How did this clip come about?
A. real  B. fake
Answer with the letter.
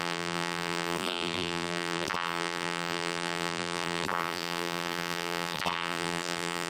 B